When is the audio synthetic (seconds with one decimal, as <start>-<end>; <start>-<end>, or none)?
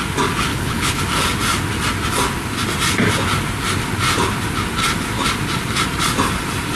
0.5-1.0